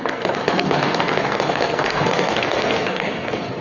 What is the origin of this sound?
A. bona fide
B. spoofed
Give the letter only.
B